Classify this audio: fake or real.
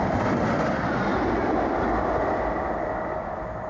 real